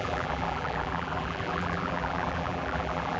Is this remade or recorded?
remade